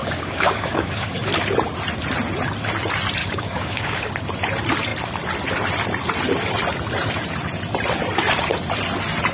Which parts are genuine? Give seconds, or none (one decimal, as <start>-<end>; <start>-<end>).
1.3-3.2; 4.1-9.3

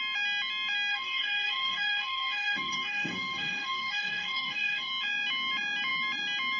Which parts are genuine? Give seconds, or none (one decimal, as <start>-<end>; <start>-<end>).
0.0-0.9; 4.9-6.6